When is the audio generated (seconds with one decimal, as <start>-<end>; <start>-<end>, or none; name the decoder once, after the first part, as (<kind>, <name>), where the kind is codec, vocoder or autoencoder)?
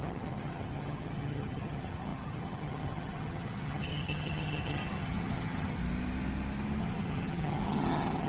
0.0-5.8 (vocoder, HiFi-GAN); 6.8-8.3